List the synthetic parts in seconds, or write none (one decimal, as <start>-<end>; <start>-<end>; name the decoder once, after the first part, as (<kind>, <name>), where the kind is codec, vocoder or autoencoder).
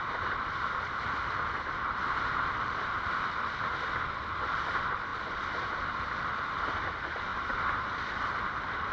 0.0-8.9 (vocoder, BigVGAN v2)